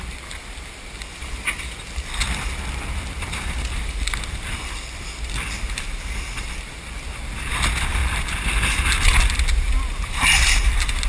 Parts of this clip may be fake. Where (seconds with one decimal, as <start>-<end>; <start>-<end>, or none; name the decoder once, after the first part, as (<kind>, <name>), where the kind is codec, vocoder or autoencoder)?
none